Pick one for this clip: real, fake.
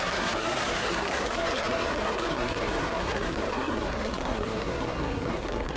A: fake